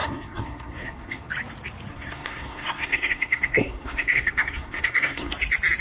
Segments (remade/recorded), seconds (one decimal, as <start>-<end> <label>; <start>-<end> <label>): 0.0-1.3 remade; 1.3-1.9 recorded; 1.9-5.3 remade; 5.3-5.8 recorded